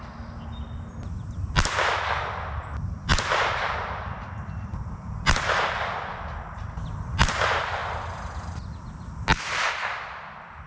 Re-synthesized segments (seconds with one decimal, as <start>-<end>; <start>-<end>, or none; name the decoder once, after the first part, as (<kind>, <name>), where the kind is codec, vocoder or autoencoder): none